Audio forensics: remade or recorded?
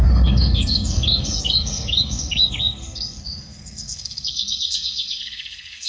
remade